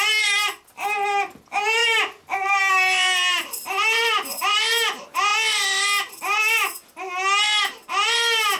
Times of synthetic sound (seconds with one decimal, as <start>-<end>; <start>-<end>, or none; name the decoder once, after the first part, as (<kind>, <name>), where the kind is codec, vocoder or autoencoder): none